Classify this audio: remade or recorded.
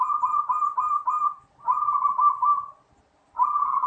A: recorded